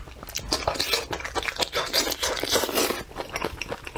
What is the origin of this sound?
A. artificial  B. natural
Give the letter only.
B